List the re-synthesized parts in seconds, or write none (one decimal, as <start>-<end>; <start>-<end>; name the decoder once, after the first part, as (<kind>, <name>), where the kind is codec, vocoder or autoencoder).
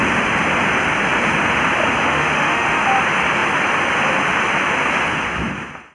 2.0-2.8 (autoencoder, DAC-VAE)